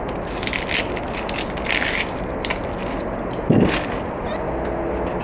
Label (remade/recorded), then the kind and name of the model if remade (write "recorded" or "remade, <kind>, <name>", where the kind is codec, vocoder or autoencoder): recorded